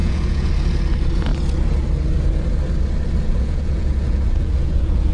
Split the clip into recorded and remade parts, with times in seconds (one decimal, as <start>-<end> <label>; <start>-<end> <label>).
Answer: 0.0-0.5 remade; 0.5-3.3 recorded; 3.3-5.1 remade